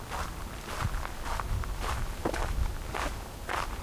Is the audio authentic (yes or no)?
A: yes